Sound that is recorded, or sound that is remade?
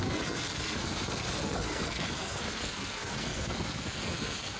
remade